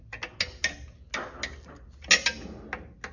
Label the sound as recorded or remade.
recorded